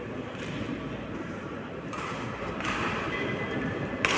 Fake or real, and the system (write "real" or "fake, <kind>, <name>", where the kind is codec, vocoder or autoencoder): real